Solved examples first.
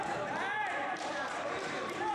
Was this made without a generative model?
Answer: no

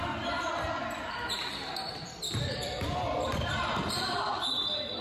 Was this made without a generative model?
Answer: no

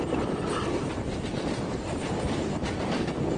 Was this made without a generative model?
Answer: no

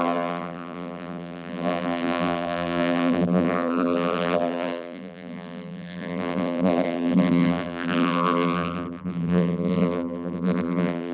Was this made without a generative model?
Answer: no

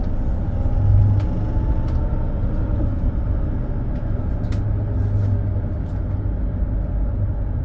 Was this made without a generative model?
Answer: yes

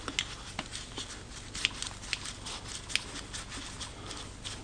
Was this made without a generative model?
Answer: yes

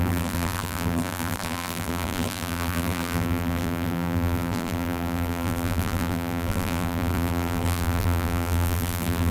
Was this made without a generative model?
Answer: no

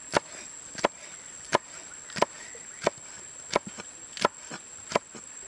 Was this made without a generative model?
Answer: yes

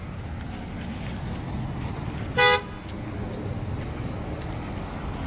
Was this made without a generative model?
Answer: yes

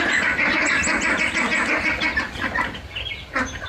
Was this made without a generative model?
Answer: yes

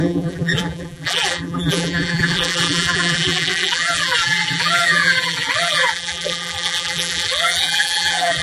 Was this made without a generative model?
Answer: no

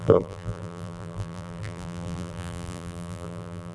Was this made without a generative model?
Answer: no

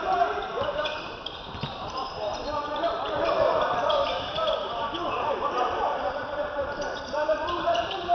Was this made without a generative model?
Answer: no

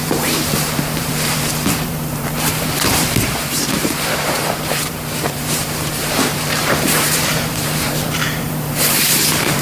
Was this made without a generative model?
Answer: no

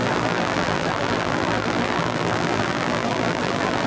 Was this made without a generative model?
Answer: no